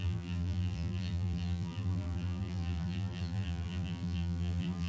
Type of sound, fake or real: fake